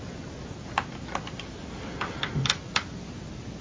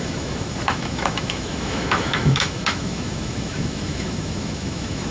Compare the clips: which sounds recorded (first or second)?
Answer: first